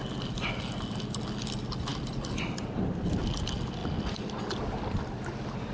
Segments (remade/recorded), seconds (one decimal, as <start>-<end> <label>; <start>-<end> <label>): 0.0-5.7 recorded